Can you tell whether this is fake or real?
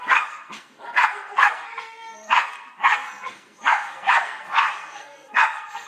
fake